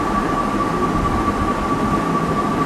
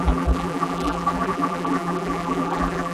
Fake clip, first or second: second